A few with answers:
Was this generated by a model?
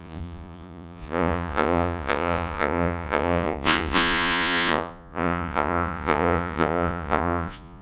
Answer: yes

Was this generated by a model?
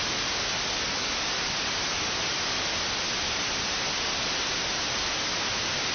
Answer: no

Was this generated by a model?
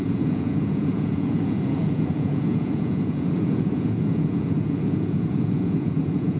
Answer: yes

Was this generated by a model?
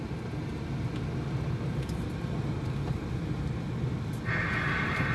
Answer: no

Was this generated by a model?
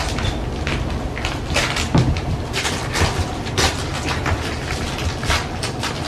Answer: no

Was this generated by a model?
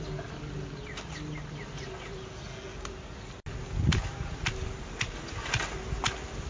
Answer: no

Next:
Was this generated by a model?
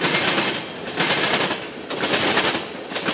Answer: no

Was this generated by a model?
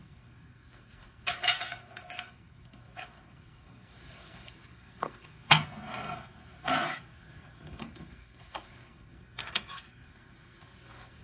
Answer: yes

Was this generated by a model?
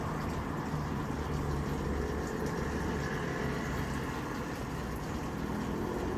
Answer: no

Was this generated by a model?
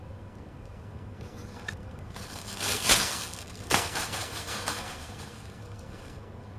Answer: yes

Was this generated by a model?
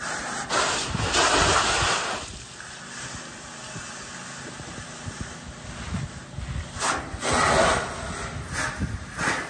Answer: no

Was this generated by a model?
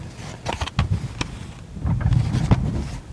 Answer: no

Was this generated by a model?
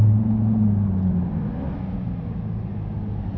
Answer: no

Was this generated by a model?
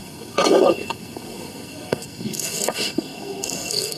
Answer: yes